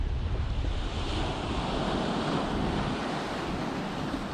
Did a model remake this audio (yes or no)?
no